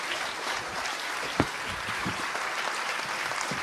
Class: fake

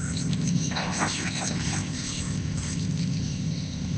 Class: fake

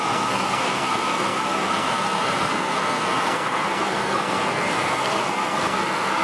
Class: fake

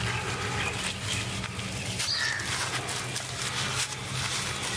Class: real